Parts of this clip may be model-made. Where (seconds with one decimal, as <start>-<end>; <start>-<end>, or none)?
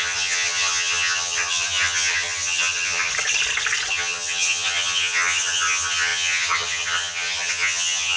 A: 0.0-3.1; 3.9-8.2